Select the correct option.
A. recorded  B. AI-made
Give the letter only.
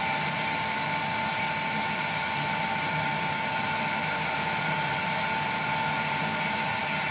A